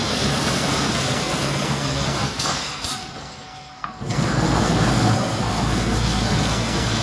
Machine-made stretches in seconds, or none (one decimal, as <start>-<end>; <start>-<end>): 0.0-7.0